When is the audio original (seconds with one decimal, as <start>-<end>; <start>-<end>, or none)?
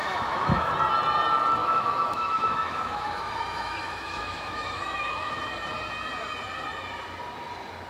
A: 0.7-1.6; 5.4-7.9